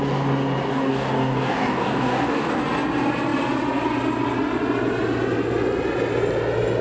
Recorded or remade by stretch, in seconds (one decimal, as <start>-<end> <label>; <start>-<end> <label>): 0.0-0.7 recorded; 0.7-2.6 remade; 2.6-6.8 recorded

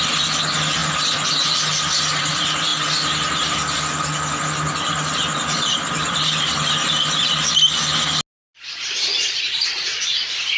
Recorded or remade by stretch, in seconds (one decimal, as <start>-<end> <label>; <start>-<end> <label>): 0.0-10.6 recorded

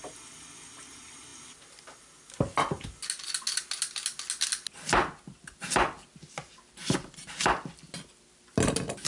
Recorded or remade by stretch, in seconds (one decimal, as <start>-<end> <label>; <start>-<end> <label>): 0.0-9.1 recorded

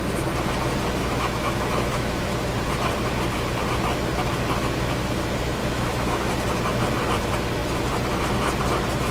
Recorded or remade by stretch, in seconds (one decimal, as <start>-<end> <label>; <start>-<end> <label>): 0.0-1.0 recorded; 1.0-2.2 remade; 2.2-5.6 recorded; 5.6-6.3 remade; 6.3-9.1 recorded

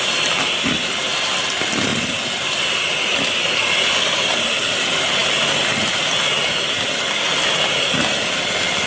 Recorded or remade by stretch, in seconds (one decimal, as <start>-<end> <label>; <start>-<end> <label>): 0.0-1.9 recorded; 1.9-2.8 remade; 2.8-8.9 recorded